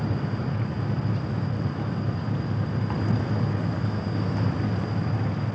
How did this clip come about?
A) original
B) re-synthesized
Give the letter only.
A